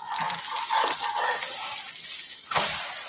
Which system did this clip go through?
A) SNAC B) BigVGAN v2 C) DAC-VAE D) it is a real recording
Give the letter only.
D